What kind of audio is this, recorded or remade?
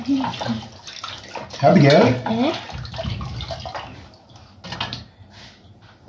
recorded